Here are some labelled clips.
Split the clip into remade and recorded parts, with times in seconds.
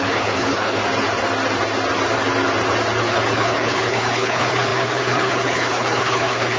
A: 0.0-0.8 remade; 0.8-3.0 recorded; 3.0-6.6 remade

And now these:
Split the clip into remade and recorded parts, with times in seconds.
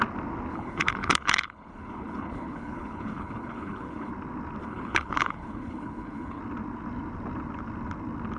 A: 0.0-0.5 recorded; 0.5-4.1 remade; 4.1-4.6 recorded; 4.6-6.4 remade; 6.4-8.4 recorded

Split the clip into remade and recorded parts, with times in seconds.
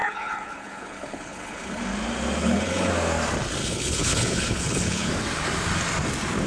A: 0.0-1.8 remade; 1.8-2.4 recorded; 2.4-2.9 remade; 2.9-3.6 recorded; 3.6-5.1 remade; 5.1-6.5 recorded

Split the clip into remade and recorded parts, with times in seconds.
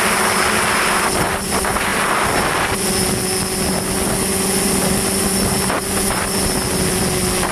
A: 0.0-7.5 recorded